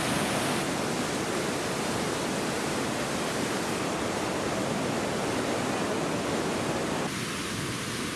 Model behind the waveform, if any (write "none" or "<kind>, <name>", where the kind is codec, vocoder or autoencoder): none